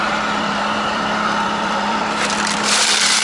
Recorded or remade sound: remade